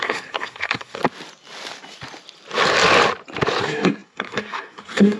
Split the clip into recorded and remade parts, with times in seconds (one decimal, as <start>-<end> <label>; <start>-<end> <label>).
0.0-1.0 remade; 1.0-3.6 recorded; 3.6-5.2 remade